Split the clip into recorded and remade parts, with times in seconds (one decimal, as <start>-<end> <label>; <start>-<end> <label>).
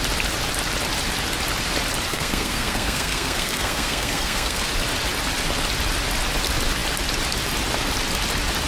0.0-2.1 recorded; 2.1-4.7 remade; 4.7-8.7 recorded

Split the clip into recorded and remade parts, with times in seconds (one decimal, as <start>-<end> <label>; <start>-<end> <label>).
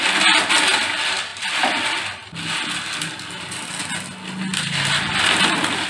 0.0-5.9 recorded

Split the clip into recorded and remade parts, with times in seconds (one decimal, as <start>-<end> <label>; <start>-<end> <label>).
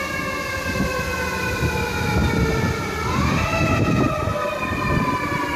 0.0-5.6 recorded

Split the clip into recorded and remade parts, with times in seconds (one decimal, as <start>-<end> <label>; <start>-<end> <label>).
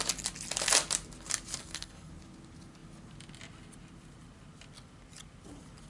0.0-1.6 recorded; 1.6-2.1 remade; 2.1-5.9 recorded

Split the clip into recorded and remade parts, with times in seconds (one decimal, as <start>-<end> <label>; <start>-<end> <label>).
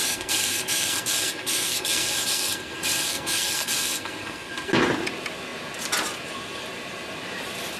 0.0-4.7 remade; 4.7-7.8 recorded